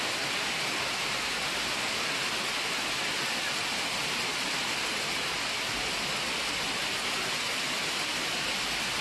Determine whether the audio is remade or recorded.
recorded